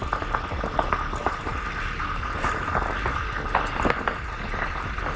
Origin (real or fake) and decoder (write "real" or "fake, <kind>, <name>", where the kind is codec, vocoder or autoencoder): real